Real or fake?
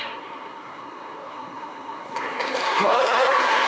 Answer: fake